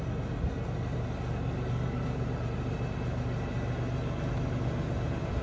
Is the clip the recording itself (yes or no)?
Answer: yes